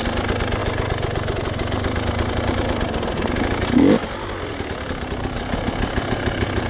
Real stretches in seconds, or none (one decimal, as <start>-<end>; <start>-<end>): 0.0-6.7